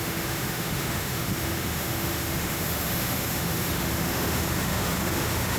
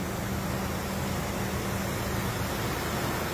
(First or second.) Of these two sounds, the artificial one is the first